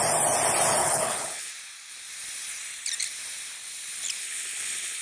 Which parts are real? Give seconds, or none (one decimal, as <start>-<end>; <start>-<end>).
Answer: 0.0-0.8; 1.5-4.2